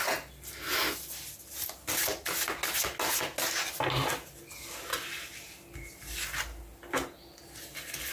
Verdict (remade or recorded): recorded